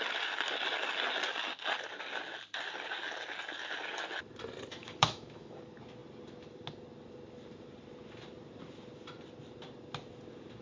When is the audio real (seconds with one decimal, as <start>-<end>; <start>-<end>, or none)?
0.0-4.8; 5.6-10.6